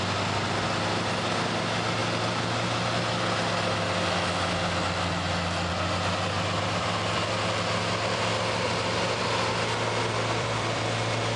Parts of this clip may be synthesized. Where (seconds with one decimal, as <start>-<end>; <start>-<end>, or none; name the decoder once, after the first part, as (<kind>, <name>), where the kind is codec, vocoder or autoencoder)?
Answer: 0.0-2.0 (vocoder, BigVGAN v2); 5.7-11.4